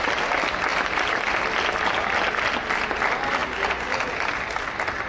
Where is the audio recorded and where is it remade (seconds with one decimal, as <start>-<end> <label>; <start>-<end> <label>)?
0.0-5.1 recorded